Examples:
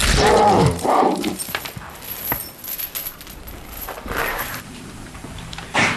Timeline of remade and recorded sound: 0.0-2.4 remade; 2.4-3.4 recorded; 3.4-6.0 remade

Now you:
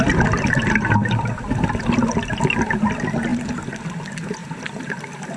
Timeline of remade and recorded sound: 0.0-3.3 recorded; 3.3-3.9 remade; 3.9-4.4 recorded; 4.4-5.0 remade; 5.0-5.4 recorded

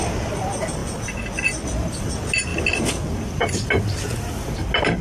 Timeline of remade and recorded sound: 0.0-5.0 recorded

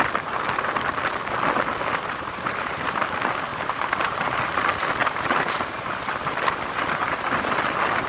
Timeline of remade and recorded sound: 0.0-1.9 recorded; 1.9-3.0 remade; 3.0-3.5 recorded; 3.5-4.1 remade; 4.1-5.0 recorded; 5.0-6.0 remade; 6.0-8.1 recorded

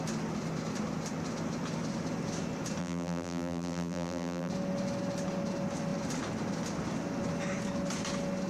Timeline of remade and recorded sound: 0.0-2.8 recorded; 2.8-4.5 remade; 4.5-8.5 recorded

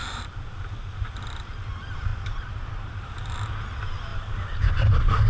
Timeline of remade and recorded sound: 0.0-0.6 remade; 0.6-2.1 recorded; 2.1-3.1 remade; 3.1-4.1 recorded; 4.1-5.3 remade